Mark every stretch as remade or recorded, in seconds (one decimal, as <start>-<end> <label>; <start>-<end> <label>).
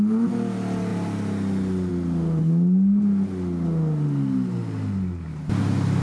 0.0-6.0 recorded